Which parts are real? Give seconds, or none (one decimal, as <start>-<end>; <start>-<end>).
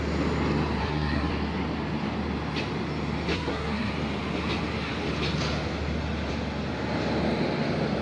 0.0-0.8; 1.3-3.3; 3.9-8.0